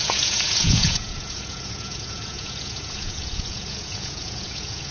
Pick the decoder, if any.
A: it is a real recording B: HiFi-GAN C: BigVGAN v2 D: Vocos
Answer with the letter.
D